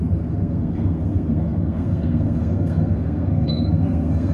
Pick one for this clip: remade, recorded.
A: remade